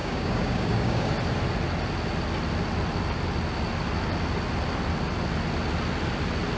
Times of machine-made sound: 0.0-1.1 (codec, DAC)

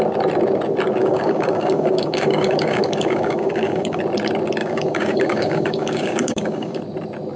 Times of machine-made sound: 1.0-4.0 (codec, DAC); 4.6-6.8

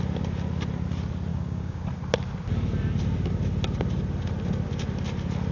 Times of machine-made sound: 1.3-1.8 (codec, DAC)

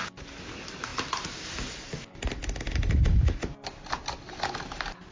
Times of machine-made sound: none

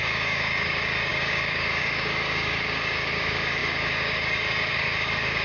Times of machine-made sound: 0.0-5.4 (codec, DAC)